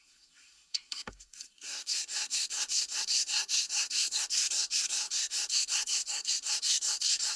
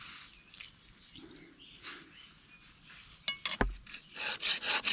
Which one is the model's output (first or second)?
first